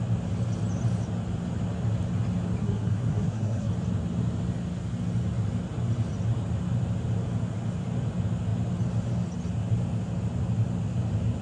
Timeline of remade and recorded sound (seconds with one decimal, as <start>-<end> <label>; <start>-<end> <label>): 0.0-2.6 recorded; 2.6-3.7 remade; 3.7-11.4 recorded